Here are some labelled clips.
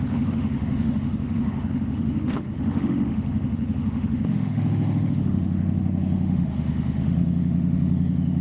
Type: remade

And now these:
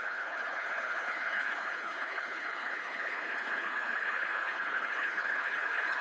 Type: remade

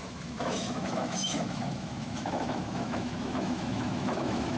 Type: remade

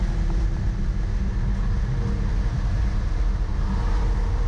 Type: recorded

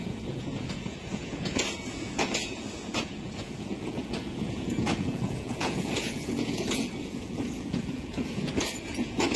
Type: remade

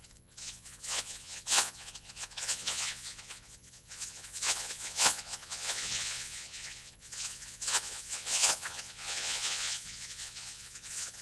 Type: remade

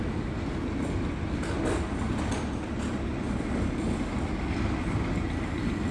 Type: recorded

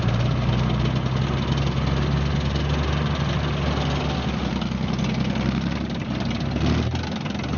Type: recorded